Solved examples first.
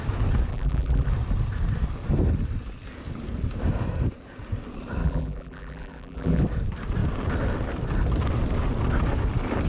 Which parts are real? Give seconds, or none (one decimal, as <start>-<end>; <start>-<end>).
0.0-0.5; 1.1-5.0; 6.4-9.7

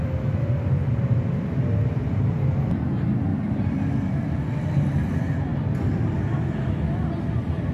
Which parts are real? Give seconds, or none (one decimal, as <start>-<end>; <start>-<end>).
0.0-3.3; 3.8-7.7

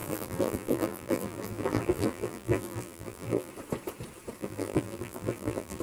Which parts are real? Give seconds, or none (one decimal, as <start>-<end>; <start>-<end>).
3.5-4.4

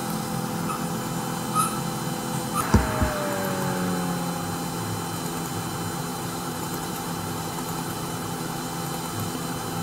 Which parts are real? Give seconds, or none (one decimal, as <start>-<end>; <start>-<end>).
0.0-6.1; 8.6-9.8